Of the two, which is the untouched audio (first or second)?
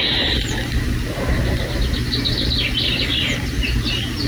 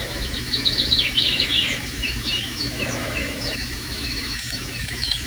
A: first